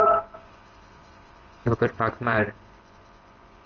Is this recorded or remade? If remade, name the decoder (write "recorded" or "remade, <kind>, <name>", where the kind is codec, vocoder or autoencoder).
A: remade, vocoder, Vocos